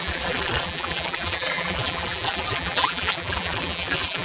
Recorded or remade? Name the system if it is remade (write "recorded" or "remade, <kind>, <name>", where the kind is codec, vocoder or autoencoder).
remade, vocoder, BigVGAN v2